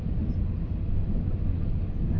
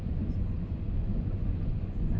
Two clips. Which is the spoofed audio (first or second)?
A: second